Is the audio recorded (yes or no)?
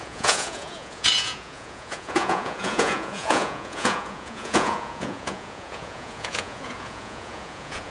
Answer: no